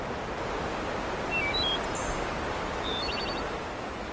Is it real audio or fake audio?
real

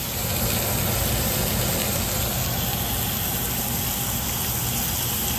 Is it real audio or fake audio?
real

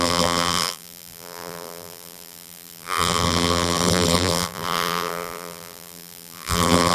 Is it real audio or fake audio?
fake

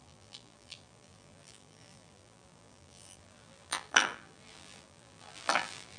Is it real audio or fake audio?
fake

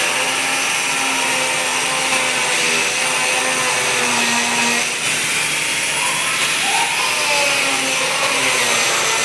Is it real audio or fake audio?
real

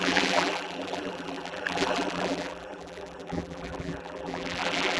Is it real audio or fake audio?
fake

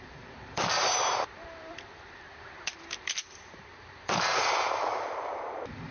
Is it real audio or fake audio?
fake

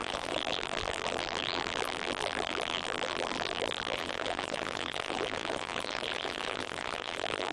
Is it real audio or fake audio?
fake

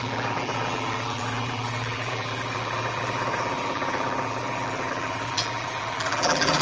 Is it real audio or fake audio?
fake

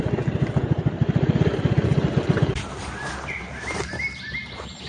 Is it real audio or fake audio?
fake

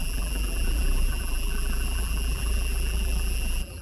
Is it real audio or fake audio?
fake